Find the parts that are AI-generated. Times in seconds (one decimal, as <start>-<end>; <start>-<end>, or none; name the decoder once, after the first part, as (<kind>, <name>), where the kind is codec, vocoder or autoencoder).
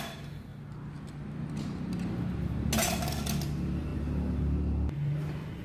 none